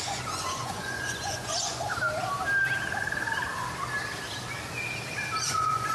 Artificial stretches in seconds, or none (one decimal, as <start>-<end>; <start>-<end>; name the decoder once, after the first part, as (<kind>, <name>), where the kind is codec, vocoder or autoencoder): 0.0-1.9 (vocoder, Vocos); 5.4-5.9